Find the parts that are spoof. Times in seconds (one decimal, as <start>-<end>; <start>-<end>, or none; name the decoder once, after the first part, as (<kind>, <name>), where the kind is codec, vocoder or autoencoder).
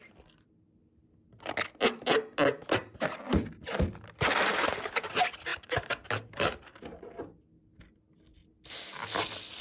4.5-5.0 (vocoder, BigVGAN v2); 5.5-7.2